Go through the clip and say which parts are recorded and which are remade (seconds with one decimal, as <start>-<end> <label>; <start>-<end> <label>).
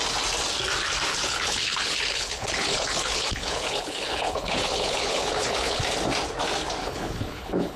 0.0-1.1 recorded; 1.1-5.8 remade; 5.8-6.8 recorded; 6.8-7.8 remade